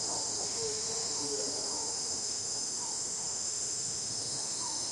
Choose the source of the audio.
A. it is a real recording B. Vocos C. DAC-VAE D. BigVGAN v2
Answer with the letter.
C